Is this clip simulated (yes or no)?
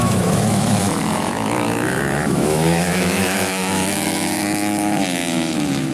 yes